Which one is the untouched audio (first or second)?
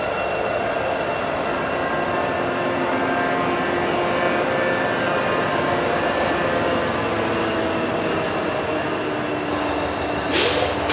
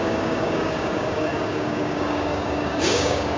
first